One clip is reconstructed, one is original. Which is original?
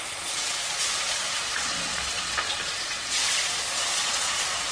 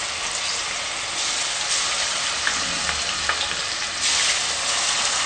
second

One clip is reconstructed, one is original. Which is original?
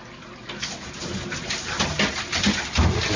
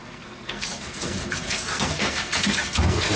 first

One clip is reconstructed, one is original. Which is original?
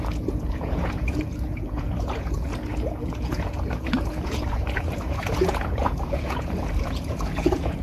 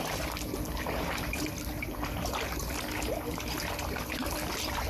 second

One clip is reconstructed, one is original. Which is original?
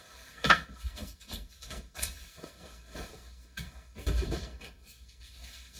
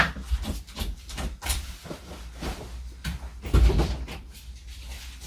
second